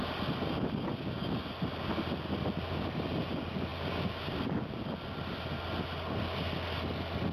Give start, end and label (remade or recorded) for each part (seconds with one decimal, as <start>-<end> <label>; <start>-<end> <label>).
0.0-7.3 recorded